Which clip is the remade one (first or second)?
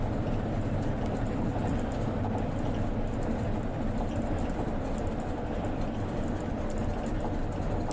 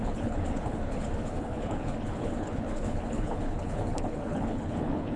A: second